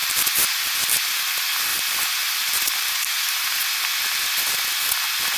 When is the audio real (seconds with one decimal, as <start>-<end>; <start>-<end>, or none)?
1.2-1.7; 3.6-5.4